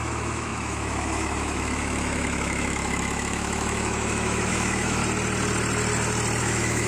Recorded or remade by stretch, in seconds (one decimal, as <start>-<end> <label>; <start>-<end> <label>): 0.0-5.0 remade; 5.0-6.4 recorded; 6.4-6.9 remade